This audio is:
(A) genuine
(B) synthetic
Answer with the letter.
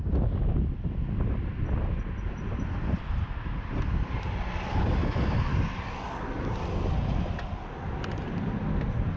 A